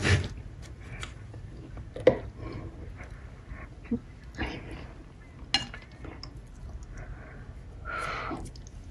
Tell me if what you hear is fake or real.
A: real